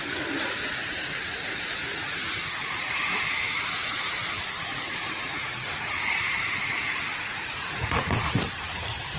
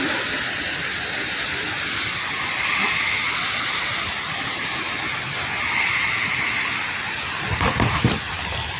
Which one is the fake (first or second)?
first